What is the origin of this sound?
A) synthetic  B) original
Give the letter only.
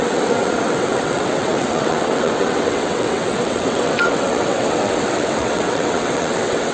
A